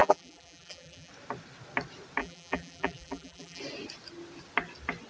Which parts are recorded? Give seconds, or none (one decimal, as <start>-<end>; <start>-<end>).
1.1-2.2; 3.6-5.1